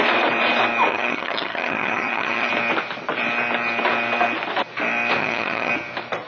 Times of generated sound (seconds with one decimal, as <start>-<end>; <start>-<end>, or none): 0.9-2.5; 5.2-5.7